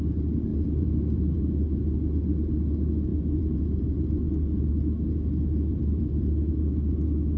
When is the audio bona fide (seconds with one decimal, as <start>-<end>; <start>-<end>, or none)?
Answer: 0.0-0.5; 1.5-3.1; 4.7-5.7; 6.3-7.4